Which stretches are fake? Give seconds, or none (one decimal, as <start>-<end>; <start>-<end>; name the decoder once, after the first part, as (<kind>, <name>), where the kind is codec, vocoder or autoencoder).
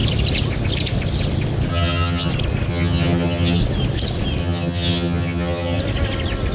1.7-2.3 (vocoder, HiFi-GAN); 2.7-3.6; 4.4-5.8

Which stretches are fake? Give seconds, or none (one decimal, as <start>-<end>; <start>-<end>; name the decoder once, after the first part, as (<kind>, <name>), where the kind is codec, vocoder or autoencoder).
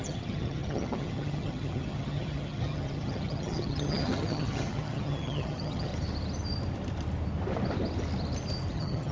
0.0-5.9 (vocoder, HiFi-GAN); 8.7-9.1